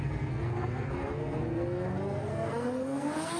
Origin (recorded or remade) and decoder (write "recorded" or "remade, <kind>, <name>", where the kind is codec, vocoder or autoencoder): remade, codec, SNAC